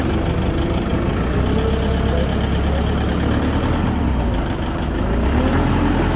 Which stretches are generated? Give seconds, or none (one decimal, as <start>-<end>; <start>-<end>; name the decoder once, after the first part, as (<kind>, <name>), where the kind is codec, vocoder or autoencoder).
none